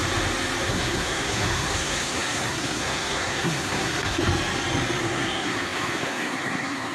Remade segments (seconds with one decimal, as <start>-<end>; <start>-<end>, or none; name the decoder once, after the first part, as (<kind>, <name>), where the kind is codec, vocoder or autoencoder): 0.6-4.2 (codec, SNAC); 5.0-6.9